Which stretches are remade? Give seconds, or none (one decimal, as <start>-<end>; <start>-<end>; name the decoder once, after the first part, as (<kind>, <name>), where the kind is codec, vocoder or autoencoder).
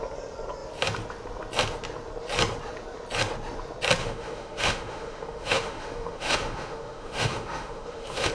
4.0-8.3 (autoencoder, DAC-VAE)